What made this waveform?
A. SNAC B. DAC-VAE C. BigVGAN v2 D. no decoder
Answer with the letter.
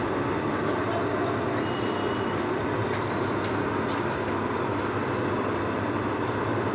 D